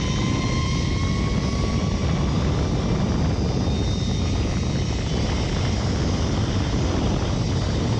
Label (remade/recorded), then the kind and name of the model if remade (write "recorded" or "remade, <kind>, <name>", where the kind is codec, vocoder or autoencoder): recorded